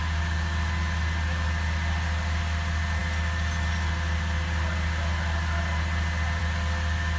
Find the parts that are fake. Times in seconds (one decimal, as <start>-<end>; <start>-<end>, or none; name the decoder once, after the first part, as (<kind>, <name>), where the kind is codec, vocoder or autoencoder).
none